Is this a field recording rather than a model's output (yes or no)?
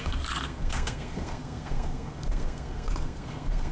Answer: no